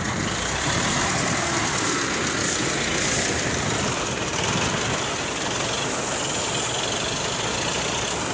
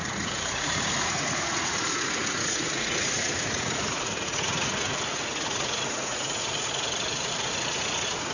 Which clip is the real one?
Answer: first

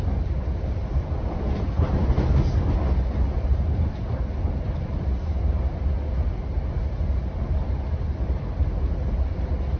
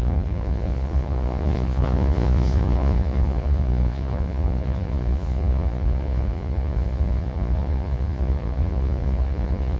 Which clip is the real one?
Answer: first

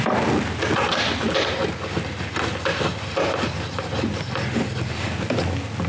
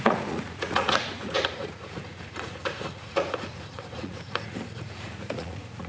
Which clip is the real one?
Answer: first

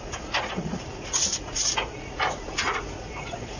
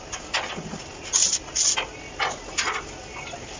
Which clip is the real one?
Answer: second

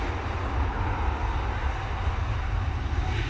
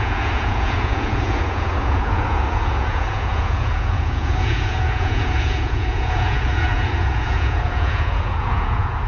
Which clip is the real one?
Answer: first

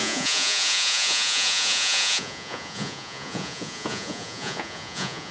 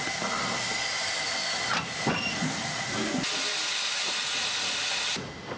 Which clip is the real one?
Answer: second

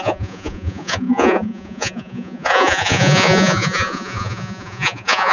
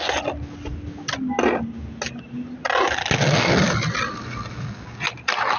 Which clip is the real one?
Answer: second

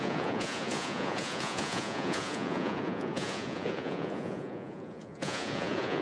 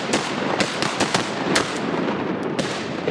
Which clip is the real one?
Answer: second